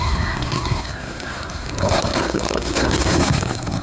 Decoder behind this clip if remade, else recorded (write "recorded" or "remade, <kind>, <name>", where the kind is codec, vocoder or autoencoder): remade, codec, SNAC